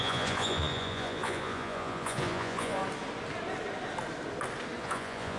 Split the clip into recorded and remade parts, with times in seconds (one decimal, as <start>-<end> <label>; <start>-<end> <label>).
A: 0.0-2.8 remade; 2.8-4.8 recorded; 4.8-5.4 remade